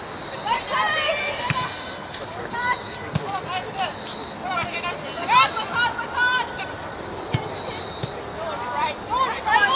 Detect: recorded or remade remade